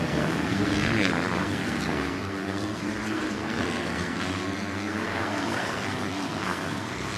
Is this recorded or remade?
remade